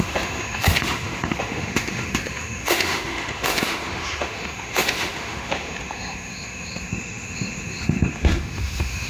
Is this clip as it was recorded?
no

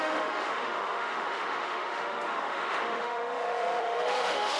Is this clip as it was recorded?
no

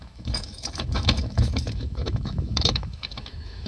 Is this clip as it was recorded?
no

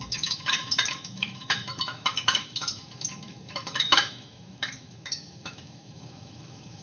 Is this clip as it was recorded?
no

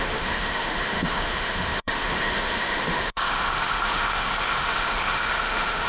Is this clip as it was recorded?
no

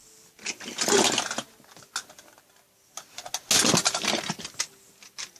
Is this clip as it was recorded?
yes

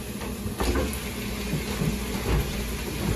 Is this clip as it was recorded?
yes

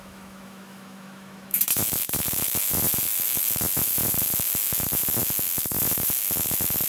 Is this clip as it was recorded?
no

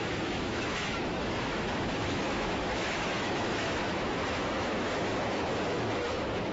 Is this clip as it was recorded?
no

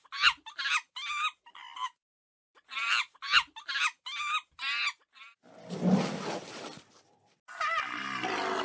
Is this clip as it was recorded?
yes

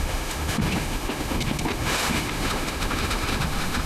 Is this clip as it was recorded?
no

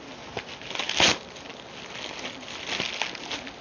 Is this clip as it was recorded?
yes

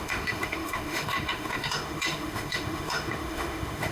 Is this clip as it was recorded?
no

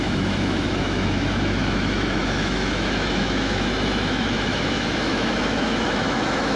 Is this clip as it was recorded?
no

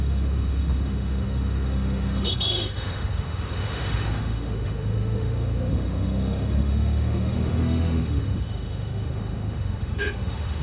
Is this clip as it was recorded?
no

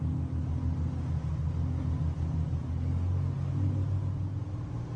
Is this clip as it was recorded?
yes